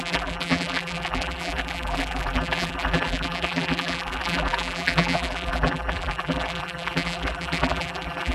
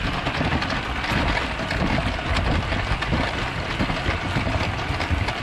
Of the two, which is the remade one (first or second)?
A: first